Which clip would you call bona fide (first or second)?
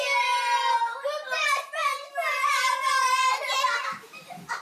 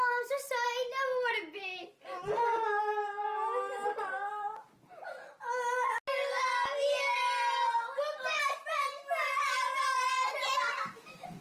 second